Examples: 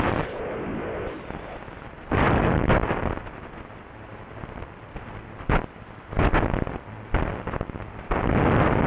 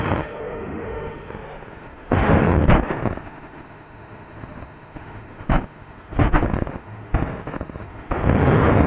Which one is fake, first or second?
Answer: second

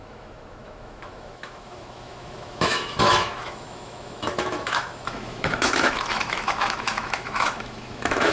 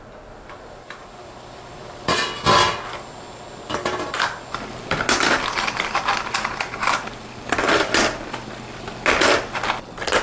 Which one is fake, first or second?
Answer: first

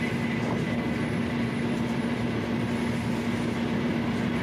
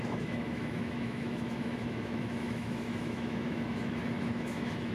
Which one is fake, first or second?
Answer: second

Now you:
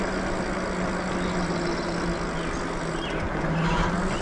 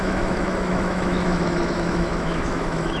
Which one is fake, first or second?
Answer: second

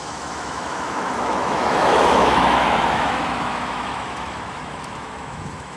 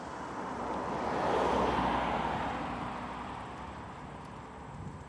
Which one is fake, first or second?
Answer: first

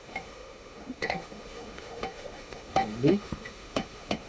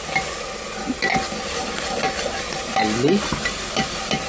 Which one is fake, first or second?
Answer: first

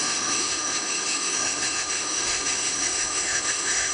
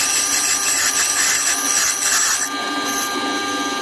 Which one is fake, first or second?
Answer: first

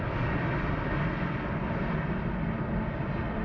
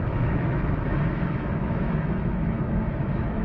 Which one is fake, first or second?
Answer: second